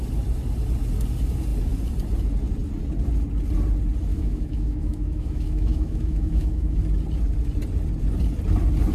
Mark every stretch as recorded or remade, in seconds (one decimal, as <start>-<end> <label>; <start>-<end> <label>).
0.0-4.1 recorded; 4.1-6.8 remade; 6.8-8.9 recorded

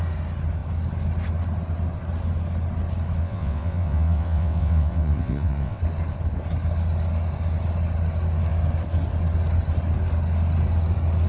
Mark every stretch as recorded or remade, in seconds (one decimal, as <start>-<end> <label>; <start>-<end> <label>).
0.0-3.2 recorded; 3.2-5.8 remade; 5.8-11.3 recorded

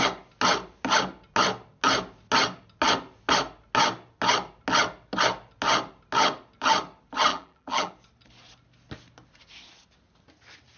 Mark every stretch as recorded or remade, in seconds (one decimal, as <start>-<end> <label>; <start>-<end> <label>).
0.0-7.3 recorded; 7.3-7.9 remade; 7.9-10.8 recorded

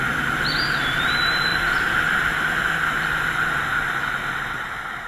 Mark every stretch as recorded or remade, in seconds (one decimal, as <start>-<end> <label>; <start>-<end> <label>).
0.0-5.1 recorded